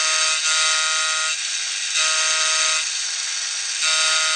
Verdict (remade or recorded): recorded